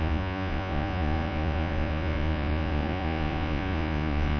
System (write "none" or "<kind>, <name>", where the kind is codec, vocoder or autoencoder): vocoder, Vocos